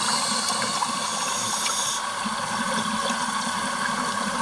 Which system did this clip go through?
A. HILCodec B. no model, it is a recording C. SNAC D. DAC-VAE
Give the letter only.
B